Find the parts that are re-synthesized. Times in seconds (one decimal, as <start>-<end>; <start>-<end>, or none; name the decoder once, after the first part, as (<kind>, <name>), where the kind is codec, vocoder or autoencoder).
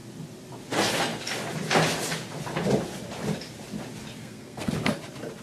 4.2-4.7 (codec, SNAC)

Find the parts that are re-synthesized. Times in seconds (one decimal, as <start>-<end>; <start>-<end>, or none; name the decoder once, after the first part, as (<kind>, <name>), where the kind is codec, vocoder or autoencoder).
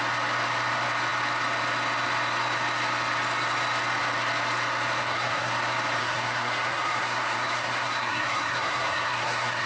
5.0-5.5 (codec, SNAC); 6.0-9.7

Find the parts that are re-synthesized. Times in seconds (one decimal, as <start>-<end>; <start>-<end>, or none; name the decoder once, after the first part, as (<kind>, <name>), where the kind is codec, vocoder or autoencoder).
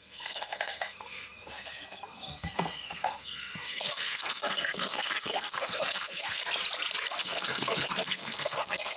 0.0-6.4 (codec, SNAC); 7.2-9.0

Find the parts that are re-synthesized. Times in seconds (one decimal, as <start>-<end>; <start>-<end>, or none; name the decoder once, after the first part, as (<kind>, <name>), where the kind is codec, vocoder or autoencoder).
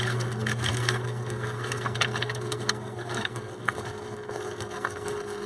0.0-5.5 (codec, SNAC)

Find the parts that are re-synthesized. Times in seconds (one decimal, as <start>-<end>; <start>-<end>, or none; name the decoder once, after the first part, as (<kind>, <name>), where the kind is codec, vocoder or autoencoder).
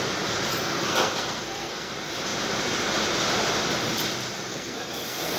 0.5-1.9 (codec, SNAC); 4.5-5.4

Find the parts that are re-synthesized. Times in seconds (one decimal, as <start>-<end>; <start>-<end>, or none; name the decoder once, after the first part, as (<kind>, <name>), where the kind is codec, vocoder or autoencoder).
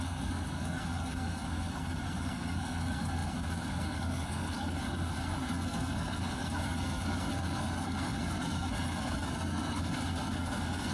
0.0-10.9 (codec, SNAC)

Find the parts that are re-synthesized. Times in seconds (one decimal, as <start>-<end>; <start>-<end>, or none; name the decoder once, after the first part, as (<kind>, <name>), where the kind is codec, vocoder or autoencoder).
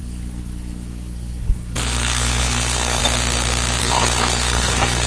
0.0-3.0 (codec, SNAC); 3.8-5.1